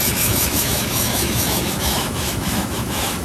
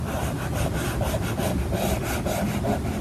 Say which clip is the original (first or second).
second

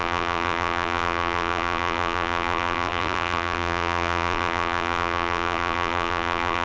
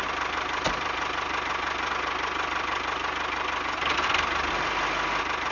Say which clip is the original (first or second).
second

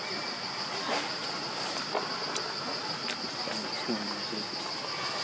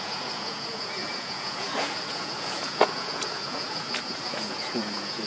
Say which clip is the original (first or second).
first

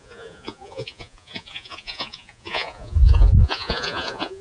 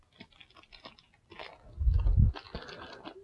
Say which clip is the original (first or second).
second